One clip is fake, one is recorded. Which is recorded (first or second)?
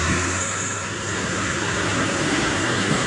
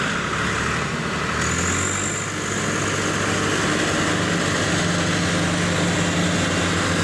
second